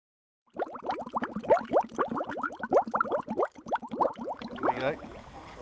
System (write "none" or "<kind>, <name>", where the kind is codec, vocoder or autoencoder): none